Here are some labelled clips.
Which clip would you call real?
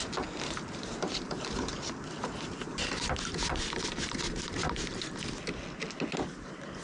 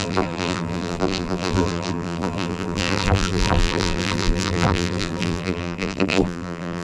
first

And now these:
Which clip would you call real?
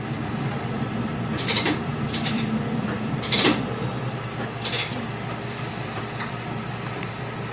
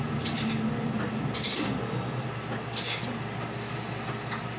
second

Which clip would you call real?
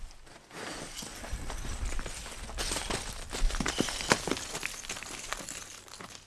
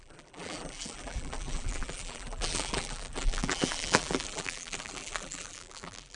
first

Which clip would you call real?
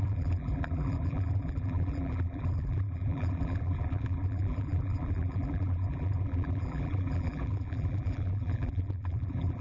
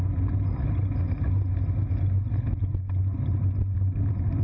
second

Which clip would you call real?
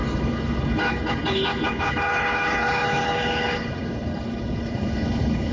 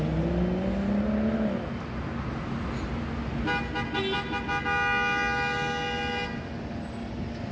second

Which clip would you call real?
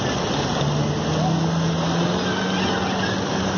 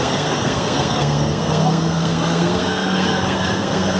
first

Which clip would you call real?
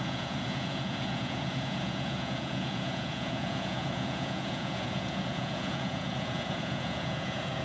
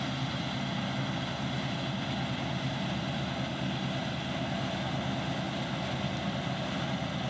second